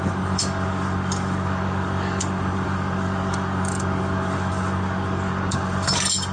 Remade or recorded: remade